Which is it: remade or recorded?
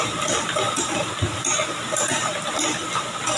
recorded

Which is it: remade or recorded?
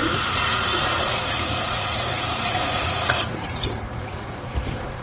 remade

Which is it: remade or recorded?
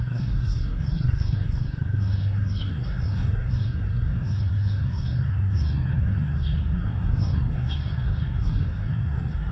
remade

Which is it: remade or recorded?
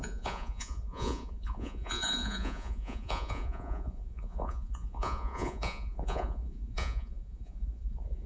remade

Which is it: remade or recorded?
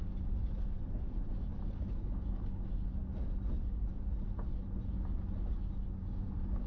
recorded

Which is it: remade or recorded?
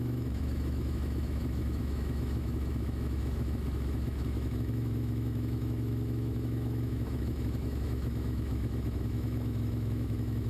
remade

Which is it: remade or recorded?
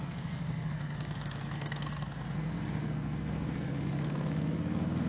remade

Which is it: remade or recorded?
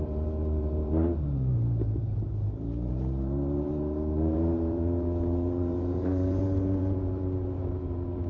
remade